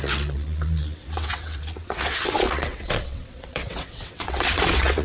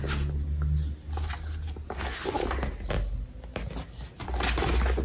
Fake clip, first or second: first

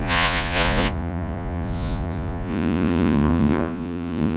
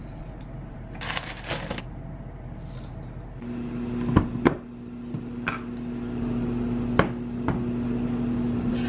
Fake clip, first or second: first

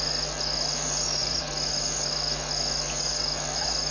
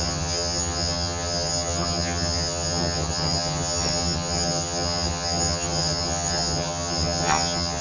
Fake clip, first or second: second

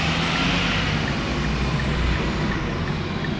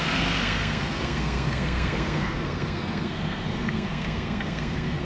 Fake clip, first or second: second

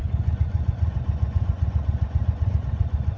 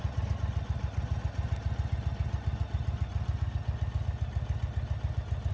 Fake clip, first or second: first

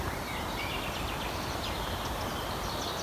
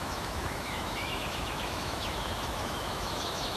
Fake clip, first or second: second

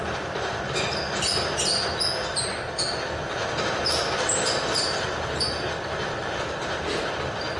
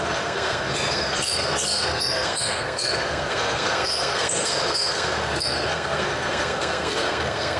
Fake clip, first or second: second